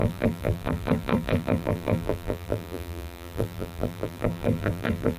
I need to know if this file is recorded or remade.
remade